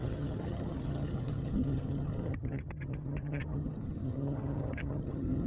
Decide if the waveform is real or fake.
fake